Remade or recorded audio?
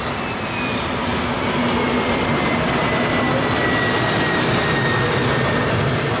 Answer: recorded